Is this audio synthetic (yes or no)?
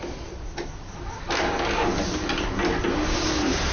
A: no